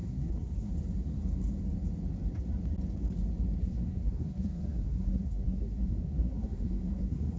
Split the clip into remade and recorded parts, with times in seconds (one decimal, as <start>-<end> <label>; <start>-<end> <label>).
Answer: 0.0-0.7 remade; 0.7-3.6 recorded; 3.6-7.4 remade